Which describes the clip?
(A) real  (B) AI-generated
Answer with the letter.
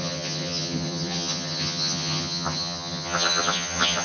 B